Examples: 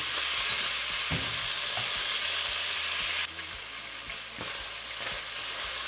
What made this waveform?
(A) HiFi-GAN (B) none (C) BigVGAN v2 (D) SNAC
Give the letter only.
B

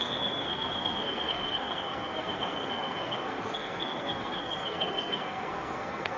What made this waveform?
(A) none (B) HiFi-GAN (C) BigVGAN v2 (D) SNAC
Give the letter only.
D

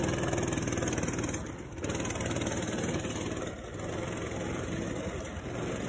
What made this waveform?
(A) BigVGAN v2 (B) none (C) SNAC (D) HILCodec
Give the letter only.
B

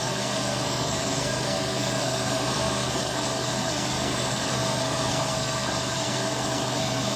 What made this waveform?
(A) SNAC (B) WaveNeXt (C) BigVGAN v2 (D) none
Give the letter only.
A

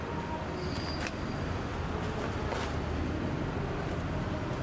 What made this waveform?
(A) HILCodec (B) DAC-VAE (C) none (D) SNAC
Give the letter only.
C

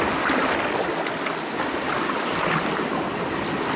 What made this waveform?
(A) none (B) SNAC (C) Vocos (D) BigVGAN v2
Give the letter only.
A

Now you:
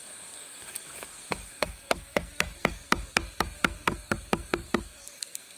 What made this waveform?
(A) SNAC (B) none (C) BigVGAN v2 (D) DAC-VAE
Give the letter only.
A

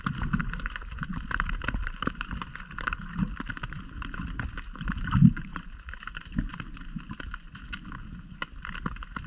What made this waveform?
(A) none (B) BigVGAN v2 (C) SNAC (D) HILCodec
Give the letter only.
A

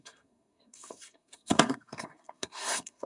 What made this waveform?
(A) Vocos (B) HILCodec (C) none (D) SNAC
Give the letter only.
D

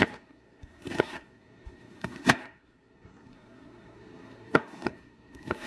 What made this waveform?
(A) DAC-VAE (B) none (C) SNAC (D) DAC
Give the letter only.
C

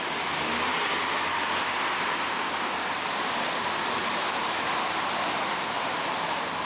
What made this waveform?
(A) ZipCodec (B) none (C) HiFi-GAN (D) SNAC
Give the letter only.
B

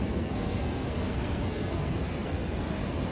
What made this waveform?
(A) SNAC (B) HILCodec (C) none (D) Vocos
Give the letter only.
A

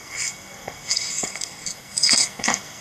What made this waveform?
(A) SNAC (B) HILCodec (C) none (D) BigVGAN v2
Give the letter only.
A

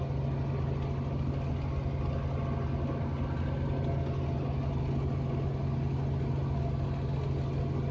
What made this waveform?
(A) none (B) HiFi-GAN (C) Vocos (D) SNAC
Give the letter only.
A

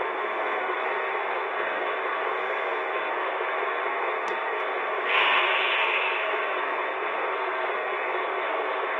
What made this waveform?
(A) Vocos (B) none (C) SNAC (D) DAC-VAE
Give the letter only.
C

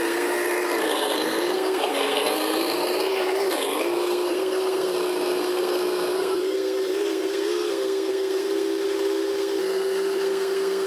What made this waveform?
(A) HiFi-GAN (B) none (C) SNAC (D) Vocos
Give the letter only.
C